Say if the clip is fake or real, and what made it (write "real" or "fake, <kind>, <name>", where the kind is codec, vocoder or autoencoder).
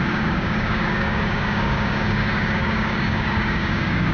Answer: fake, codec, DAC